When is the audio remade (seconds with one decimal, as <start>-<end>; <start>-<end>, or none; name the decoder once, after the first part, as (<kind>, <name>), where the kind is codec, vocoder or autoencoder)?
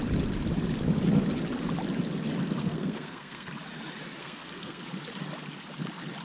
2.6-3.5 (codec, SNAC); 4.2-4.8